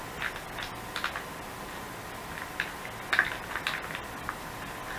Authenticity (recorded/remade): recorded